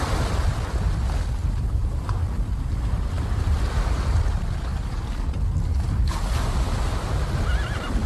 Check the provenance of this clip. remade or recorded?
recorded